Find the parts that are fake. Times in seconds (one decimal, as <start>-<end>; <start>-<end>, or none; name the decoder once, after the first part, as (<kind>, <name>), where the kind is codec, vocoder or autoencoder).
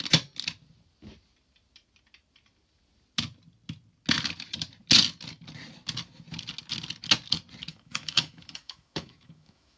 7.7-9.8 (autoencoder, DAC-VAE)